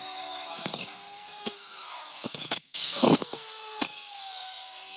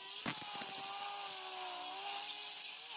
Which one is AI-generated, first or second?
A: first